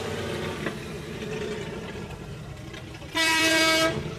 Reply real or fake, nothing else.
fake